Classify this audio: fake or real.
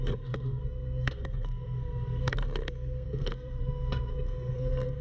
fake